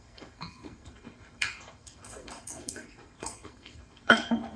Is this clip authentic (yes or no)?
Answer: no